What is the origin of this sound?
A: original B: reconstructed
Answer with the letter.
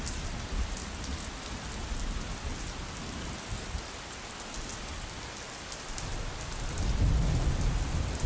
A